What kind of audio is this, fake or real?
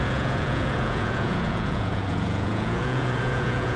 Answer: fake